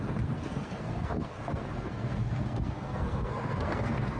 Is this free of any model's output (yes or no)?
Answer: no